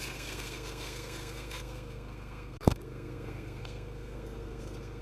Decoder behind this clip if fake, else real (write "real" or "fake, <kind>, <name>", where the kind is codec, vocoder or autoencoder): fake, codec, SNAC